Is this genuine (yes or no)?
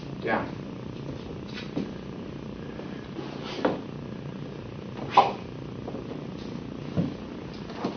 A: yes